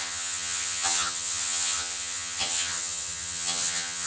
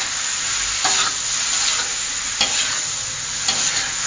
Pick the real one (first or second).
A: second